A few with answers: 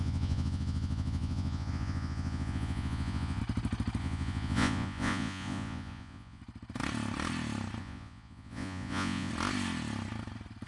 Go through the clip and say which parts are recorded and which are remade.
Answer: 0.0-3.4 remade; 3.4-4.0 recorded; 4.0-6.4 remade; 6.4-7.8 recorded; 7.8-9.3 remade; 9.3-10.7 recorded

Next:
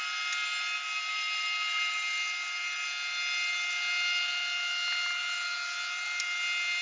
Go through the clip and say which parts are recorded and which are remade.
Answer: 0.0-6.8 recorded

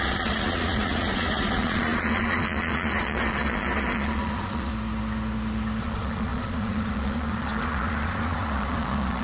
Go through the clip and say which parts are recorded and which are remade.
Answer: 0.0-4.7 remade; 4.7-5.8 recorded; 5.8-9.2 remade